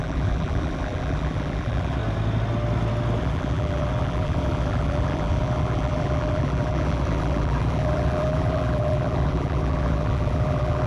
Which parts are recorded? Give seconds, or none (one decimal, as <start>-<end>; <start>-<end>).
2.0-3.2